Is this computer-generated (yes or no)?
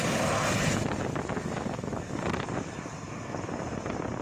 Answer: no